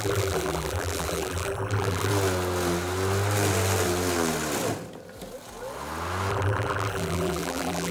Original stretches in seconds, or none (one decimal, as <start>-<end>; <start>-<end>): 2.1-6.3

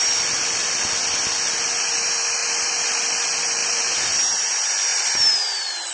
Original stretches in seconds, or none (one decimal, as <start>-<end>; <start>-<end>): 0.0-2.4; 3.2-3.6; 4.2-4.9

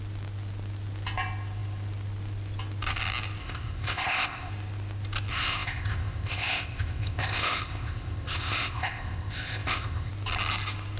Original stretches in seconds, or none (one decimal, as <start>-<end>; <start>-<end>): 0.0-3.4; 4.5-5.3; 10.1-11.0

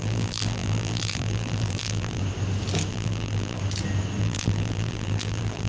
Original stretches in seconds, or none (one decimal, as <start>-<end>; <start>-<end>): 2.2-2.9; 3.6-4.2